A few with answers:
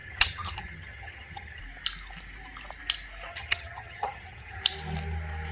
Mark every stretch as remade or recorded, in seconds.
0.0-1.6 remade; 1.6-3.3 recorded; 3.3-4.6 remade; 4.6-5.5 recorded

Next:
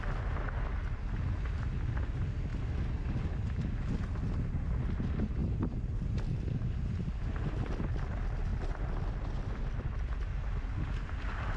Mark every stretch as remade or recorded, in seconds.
0.0-11.6 recorded

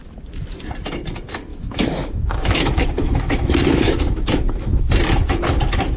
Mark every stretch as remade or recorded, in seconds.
0.0-1.5 recorded; 1.5-4.9 remade; 4.9-6.0 recorded

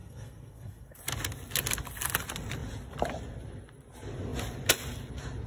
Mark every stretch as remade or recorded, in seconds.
0.0-1.0 remade; 1.0-5.5 recorded